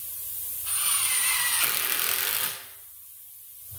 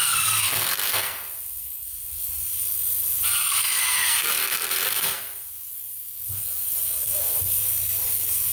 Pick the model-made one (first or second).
second